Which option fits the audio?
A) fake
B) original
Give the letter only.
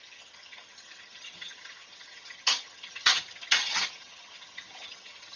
A